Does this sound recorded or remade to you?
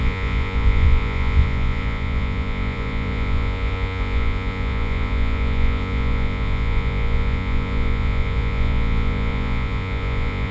remade